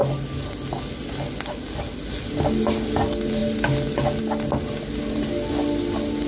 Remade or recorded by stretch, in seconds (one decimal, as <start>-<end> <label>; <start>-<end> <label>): 0.0-6.3 recorded